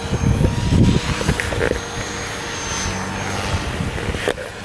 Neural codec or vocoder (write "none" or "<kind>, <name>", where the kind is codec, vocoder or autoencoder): none